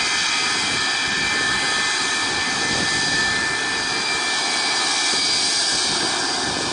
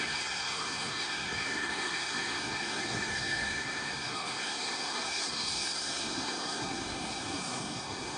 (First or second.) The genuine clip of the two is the first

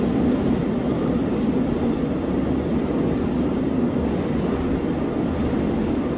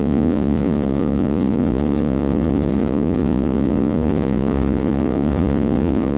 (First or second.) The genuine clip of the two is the first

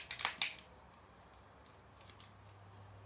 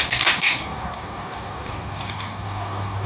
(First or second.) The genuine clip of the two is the first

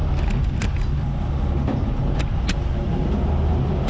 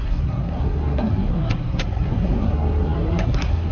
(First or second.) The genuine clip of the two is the first